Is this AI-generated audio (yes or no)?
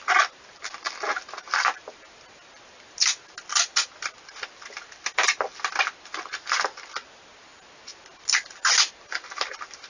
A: no